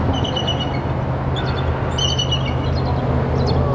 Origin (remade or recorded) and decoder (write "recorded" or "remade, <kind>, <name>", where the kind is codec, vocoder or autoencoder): recorded